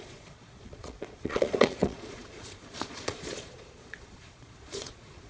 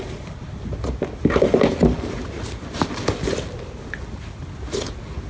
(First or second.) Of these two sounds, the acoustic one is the second